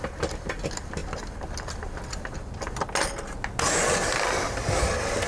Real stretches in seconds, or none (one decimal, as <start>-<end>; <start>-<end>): 0.0-5.3